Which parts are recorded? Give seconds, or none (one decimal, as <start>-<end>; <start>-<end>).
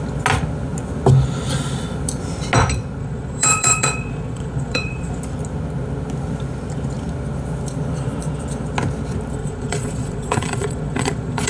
0.0-3.0; 5.2-9.4